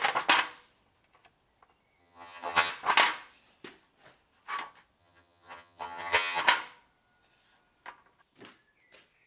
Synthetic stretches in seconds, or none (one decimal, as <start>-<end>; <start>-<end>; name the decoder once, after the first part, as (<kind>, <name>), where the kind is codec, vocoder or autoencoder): 2.0-2.7 (vocoder, HiFi-GAN); 5.0-6.4